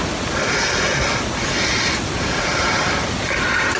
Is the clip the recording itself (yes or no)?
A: yes